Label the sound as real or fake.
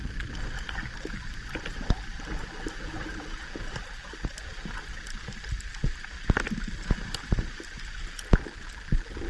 real